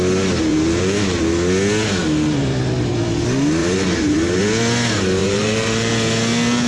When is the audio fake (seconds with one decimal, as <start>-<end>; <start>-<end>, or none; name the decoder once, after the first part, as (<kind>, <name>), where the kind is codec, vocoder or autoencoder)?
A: 0.5-1.2 (vocoder, BigVGAN v2); 3.6-4.4; 5.2-5.9